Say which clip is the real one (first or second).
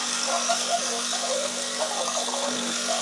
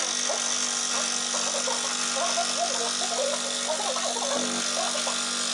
second